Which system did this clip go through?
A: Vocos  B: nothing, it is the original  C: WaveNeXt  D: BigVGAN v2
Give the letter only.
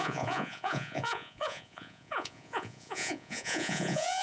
A